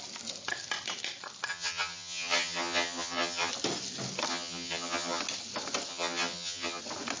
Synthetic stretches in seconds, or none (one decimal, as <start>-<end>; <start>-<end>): 1.5-3.5; 4.3-5.2; 5.9-6.8